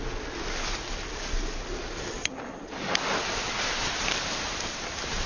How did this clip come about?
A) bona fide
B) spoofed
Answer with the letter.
A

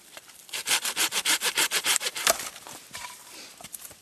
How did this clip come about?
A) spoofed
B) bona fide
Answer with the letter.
A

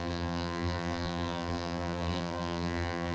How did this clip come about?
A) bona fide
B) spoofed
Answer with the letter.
B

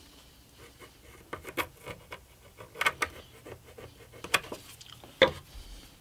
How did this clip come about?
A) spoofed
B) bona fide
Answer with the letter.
B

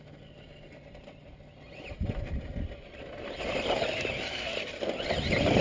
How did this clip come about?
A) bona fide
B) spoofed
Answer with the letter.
A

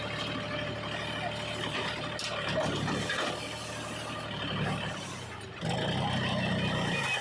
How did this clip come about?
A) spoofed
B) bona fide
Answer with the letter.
B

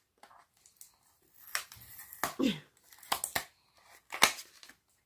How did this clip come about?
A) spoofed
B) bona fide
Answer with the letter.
B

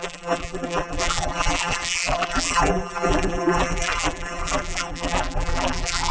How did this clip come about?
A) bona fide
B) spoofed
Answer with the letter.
B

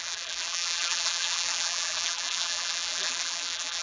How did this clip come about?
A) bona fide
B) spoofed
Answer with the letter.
B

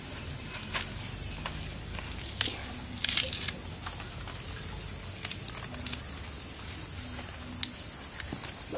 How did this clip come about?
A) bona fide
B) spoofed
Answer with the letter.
A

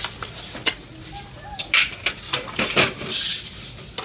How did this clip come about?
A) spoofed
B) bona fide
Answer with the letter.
B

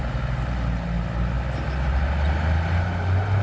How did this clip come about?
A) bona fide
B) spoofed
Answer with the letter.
A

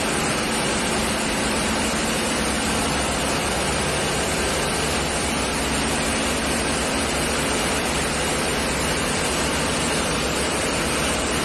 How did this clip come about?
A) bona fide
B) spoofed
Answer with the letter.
B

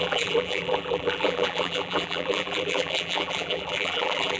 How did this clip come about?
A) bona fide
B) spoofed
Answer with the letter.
B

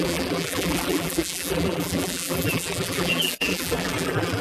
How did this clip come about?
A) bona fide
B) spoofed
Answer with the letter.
B